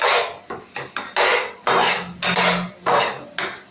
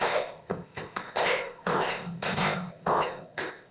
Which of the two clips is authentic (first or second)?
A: first